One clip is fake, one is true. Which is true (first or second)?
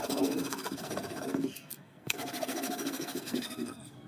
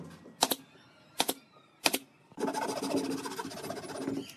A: second